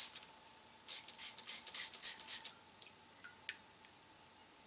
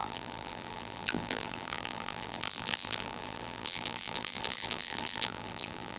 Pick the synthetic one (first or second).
second